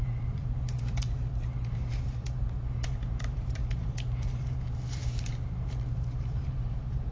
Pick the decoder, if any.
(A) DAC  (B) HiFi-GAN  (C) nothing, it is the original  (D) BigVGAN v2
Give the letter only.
D